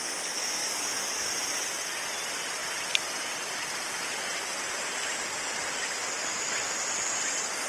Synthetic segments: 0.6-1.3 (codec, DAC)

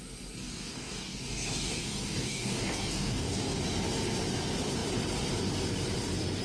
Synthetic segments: 0.4-3.6 (codec, DAC)

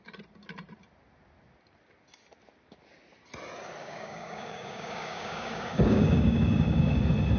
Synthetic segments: 3.8-7.0 (codec, DAC)

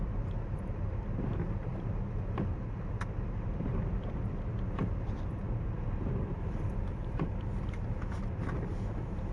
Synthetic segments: none